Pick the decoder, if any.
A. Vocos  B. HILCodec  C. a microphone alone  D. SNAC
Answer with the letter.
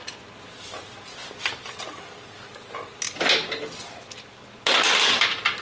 C